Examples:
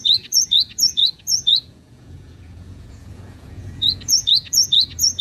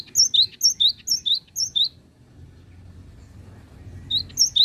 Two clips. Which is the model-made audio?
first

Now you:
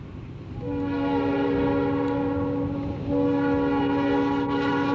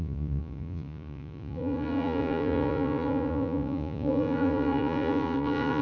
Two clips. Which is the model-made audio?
second